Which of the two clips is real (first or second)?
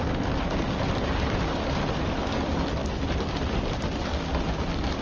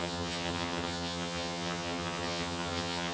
first